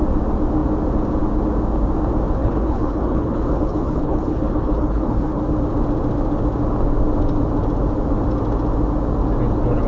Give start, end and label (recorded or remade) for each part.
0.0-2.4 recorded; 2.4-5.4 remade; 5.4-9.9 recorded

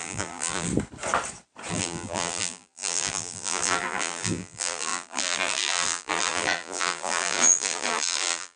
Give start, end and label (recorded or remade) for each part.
0.0-0.7 remade; 0.7-1.7 recorded; 1.7-8.6 remade

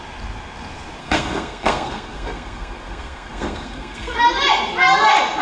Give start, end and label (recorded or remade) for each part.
0.0-1.0 recorded; 1.0-4.2 remade; 4.2-5.4 recorded

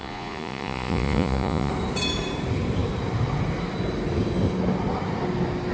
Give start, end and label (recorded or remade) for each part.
0.0-1.7 remade; 1.7-5.7 recorded

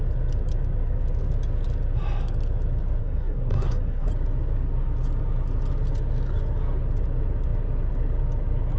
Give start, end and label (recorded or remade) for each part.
0.0-3.0 recorded; 3.0-4.1 remade; 4.1-8.8 recorded

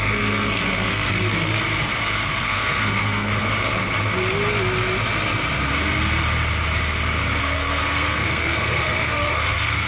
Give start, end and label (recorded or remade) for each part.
0.0-1.5 remade; 1.5-2.0 recorded; 2.0-3.3 remade; 3.3-7.4 recorded; 7.4-9.9 remade